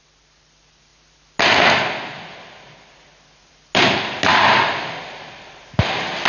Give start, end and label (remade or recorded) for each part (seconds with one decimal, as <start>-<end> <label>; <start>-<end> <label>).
0.0-6.3 recorded